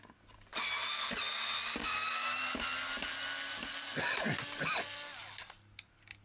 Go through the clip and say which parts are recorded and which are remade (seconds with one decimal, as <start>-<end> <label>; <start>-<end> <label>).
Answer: 0.0-1.8 recorded; 1.8-2.4 remade; 2.4-6.2 recorded